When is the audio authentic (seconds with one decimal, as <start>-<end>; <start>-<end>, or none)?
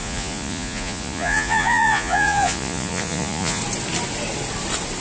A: 3.6-5.0